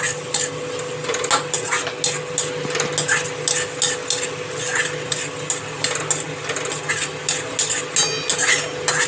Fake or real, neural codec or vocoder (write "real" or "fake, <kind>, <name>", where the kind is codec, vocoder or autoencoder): real